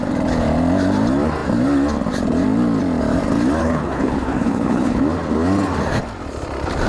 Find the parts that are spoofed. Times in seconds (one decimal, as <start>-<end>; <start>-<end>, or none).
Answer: 3.6-5.0